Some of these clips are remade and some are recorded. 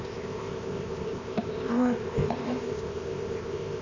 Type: remade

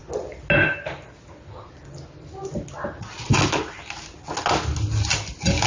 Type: recorded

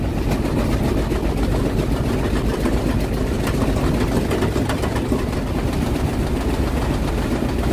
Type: recorded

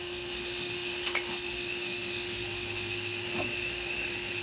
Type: remade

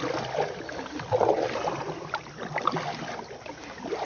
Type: recorded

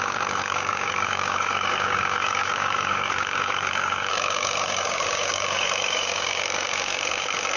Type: remade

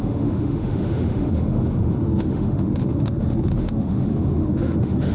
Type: remade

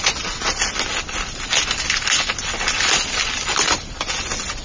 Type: recorded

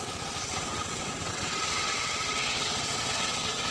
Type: remade